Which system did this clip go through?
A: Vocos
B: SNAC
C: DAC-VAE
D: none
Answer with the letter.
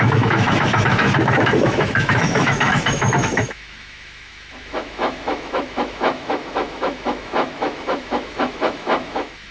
C